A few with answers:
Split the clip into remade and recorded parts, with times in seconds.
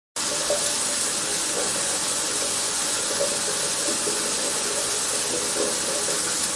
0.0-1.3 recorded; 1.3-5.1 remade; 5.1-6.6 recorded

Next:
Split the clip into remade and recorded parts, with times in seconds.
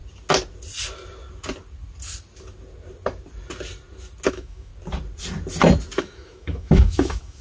0.0-4.3 recorded; 4.3-4.7 remade; 4.7-6.0 recorded; 6.0-7.4 remade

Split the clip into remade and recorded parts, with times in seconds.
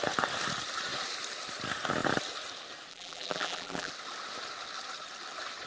0.0-2.9 recorded; 2.9-3.9 remade; 3.9-5.7 recorded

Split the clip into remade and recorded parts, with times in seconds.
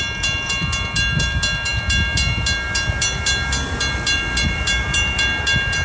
0.0-5.8 recorded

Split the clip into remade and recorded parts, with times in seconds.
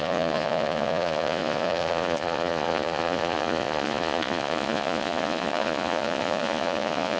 0.0-7.2 remade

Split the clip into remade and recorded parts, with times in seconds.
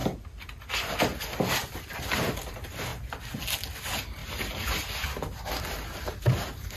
0.0-6.8 recorded